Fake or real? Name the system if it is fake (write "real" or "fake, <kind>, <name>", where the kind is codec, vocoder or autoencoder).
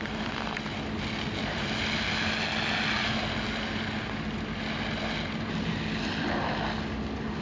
real